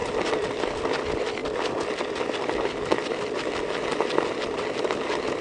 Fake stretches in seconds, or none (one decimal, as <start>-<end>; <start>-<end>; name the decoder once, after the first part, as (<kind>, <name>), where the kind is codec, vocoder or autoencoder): none